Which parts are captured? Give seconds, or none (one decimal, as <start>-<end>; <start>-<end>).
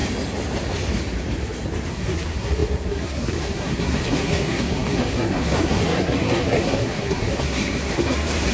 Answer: 0.0-1.9